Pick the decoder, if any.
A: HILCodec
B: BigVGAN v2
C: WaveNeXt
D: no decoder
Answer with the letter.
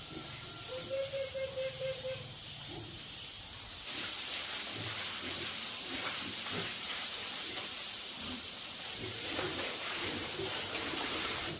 B